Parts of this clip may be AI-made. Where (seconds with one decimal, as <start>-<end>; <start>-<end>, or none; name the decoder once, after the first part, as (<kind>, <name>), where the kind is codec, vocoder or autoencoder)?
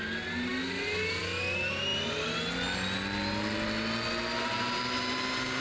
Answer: none